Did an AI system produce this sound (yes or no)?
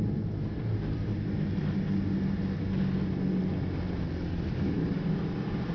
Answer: no